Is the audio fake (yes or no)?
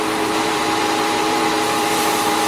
yes